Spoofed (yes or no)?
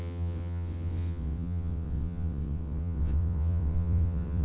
yes